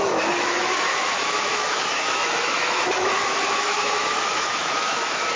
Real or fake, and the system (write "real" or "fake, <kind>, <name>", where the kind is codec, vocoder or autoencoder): fake, autoencoder, DAC-VAE